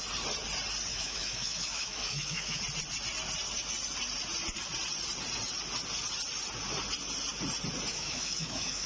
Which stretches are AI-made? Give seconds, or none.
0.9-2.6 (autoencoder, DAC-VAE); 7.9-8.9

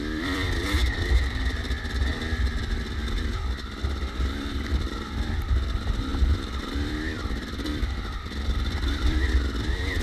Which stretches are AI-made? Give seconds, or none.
0.0-2.1 (vocoder, BigVGAN v2); 2.6-3.3; 4.0-6.1; 6.6-10.0

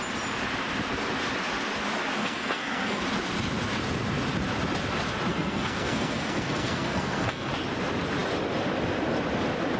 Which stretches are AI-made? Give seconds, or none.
2.2-3.0 (codec, SNAC); 5.3-7.5